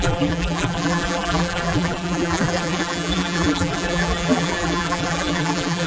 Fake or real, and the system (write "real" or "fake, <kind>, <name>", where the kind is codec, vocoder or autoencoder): fake, vocoder, BigVGAN v2